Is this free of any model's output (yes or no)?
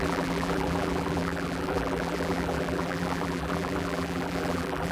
no